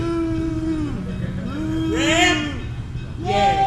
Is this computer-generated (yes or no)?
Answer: no